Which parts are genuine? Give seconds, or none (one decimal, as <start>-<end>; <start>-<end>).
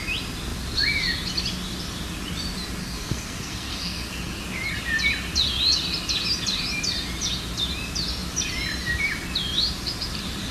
0.0-2.8; 4.4-10.5